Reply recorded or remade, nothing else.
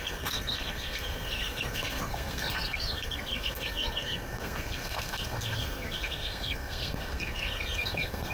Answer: remade